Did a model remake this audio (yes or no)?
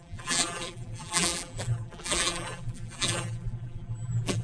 yes